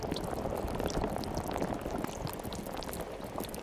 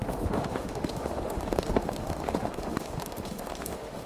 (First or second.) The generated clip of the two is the second